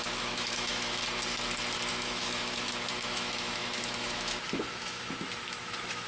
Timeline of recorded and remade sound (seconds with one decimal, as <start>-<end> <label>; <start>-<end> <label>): 0.0-1.0 remade; 1.0-1.9 recorded; 1.9-6.1 remade